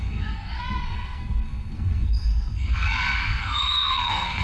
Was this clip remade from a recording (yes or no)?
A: yes